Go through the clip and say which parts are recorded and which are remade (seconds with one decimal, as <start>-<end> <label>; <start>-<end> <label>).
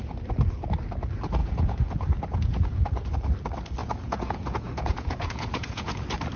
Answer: 0.0-1.4 recorded; 1.4-3.1 remade; 3.1-3.8 recorded; 3.8-6.0 remade; 6.0-6.4 recorded